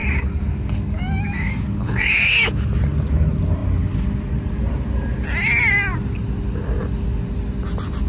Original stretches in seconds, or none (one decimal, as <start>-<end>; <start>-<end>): 2.8-8.1